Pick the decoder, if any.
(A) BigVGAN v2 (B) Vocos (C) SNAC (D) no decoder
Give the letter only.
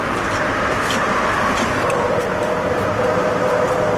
D